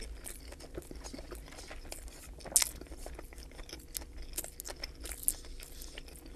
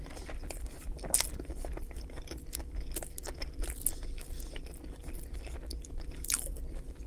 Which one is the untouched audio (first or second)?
first